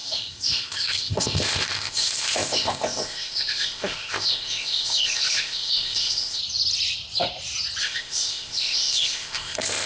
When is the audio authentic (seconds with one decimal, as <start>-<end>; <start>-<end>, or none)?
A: 6.4-7.8